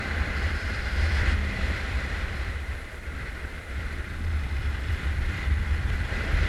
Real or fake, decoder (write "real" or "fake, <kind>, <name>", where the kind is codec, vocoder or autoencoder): fake, vocoder, BigVGAN v2